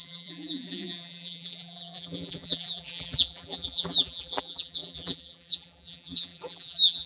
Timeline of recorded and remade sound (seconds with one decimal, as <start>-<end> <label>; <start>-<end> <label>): 0.0-7.1 remade

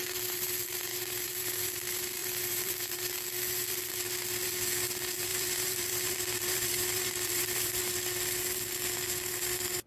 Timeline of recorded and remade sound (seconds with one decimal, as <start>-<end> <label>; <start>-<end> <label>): 0.0-2.2 recorded; 2.2-2.7 remade; 2.7-5.3 recorded; 5.3-7.8 remade; 7.8-9.9 recorded

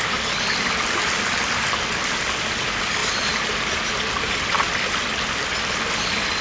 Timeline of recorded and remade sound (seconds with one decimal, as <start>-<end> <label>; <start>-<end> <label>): 0.0-6.4 recorded

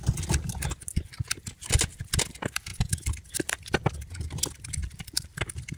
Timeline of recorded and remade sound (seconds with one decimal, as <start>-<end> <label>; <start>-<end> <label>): 0.0-4.8 recorded; 4.8-5.8 remade